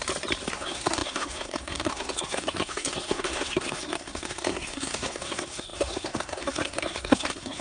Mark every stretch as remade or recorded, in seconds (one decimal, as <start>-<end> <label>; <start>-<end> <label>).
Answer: 0.0-0.5 recorded; 0.5-7.6 remade